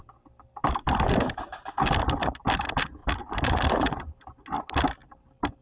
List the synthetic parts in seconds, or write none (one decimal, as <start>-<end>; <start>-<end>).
0.6-2.0; 3.0-4.0; 5.0-5.6